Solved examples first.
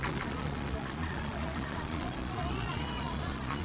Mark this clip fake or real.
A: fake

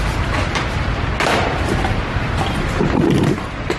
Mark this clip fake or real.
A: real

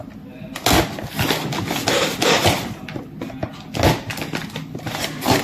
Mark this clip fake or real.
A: real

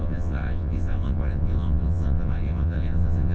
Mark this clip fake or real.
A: fake